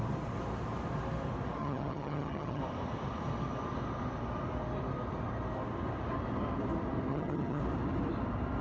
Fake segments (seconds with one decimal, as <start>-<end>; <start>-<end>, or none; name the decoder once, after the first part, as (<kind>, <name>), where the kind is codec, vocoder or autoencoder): 1.6-2.6 (vocoder, HiFi-GAN); 7.1-7.6

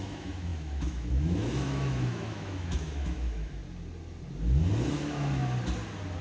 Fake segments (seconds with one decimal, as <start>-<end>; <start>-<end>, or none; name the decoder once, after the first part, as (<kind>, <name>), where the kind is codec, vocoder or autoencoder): 0.0-3.6 (autoencoder, DAC-VAE); 4.9-5.4

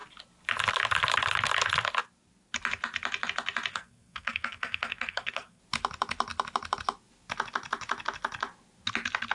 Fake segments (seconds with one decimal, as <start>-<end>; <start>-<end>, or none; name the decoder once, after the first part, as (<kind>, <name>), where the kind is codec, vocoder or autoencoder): 3.7-5.6 (codec, SNAC)

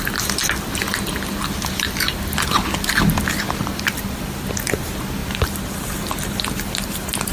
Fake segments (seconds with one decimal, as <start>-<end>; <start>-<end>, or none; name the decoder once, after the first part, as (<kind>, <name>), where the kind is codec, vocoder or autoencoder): none

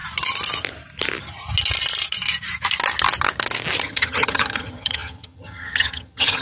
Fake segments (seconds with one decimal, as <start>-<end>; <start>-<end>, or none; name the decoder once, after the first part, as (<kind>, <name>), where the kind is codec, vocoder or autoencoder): 3.8-6.4 (vocoder, HiFi-GAN)

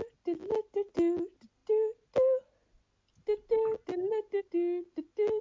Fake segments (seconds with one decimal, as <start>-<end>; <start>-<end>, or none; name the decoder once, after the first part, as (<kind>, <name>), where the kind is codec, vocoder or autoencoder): none

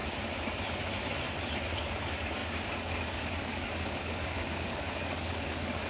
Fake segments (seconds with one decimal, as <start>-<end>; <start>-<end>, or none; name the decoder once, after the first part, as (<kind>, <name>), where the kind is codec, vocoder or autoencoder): 1.7-5.9 (codec, DAC)